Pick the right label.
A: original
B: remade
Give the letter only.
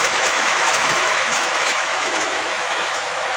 B